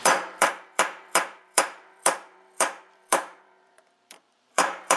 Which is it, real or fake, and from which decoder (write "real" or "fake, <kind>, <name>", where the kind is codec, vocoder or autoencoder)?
fake, vocoder, BigVGAN v2